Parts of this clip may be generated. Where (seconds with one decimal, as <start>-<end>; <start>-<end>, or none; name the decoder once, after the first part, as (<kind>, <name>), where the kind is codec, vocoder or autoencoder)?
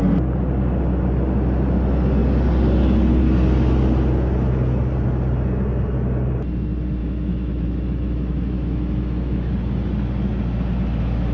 7.0-9.5 (autoencoder, DAC-VAE)